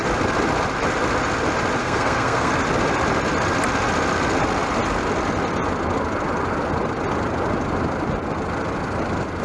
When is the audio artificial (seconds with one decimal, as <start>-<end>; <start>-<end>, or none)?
1.8-2.5